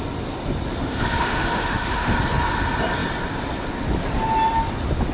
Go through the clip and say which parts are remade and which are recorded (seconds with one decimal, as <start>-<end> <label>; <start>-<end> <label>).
0.0-0.7 recorded; 0.7-2.1 remade; 2.1-5.1 recorded